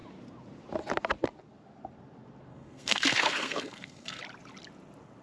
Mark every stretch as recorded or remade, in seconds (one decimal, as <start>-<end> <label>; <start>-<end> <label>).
0.0-2.5 recorded; 2.5-4.2 remade; 4.2-5.2 recorded